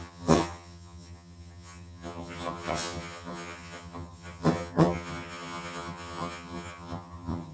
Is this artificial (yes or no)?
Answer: yes